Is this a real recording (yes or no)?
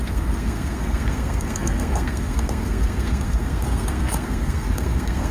no